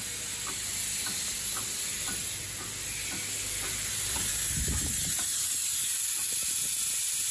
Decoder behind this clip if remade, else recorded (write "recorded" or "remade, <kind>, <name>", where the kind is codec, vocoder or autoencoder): recorded